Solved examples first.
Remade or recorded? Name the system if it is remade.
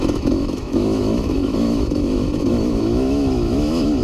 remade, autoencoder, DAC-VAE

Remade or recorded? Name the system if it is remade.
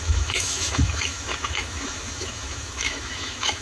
remade, autoencoder, DAC-VAE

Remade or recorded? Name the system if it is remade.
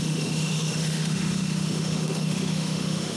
remade, autoencoder, DAC-VAE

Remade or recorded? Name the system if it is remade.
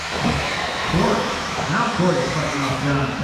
remade, autoencoder, DAC-VAE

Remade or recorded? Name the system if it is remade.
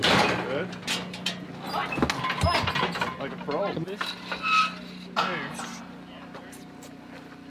recorded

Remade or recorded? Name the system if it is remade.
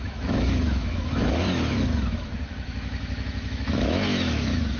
remade, autoencoder, DAC-VAE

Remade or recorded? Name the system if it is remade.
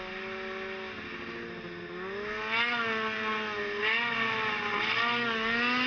recorded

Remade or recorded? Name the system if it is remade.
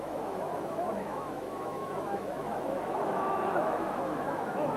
remade, autoencoder, DAC-VAE